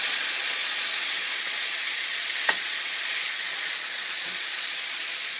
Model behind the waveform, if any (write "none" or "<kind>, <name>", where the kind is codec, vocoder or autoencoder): vocoder, Vocos